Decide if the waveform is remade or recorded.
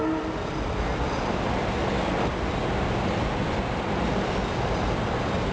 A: recorded